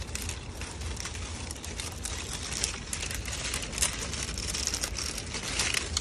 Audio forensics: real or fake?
real